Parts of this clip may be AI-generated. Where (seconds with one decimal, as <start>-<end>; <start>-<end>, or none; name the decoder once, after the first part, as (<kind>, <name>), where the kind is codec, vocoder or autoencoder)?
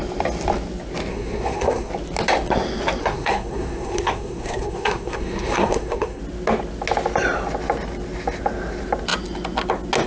1.1-1.9 (codec, SNAC); 3.0-6.2